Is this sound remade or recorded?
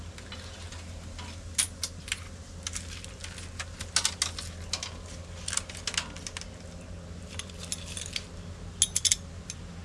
recorded